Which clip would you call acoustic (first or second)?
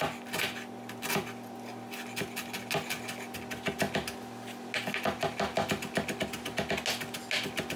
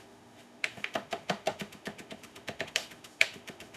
first